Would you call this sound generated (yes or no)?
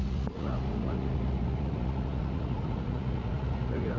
yes